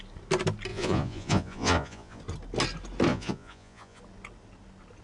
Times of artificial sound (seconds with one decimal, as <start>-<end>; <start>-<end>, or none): 0.7-2.2; 3.1-4.0